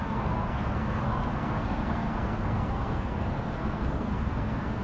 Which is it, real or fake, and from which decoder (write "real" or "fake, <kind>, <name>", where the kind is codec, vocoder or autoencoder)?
fake, codec, SNAC